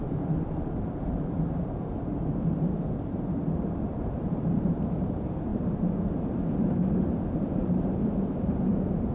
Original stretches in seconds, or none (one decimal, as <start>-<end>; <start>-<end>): 5.5-7.0